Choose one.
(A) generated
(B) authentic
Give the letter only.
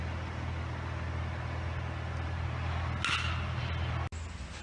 B